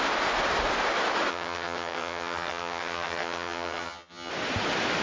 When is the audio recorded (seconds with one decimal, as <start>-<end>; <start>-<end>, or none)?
0.0-1.3; 4.3-5.0

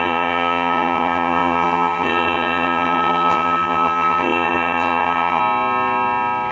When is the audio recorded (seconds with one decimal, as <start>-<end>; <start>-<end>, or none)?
5.4-6.5